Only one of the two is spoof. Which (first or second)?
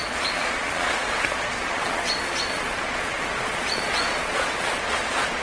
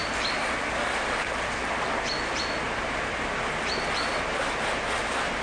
first